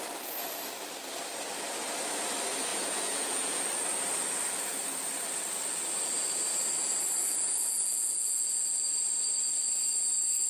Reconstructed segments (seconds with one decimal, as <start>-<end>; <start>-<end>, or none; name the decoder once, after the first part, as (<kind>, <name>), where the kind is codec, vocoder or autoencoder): 2.7-3.6 (vocoder, Vocos); 7.2-8.8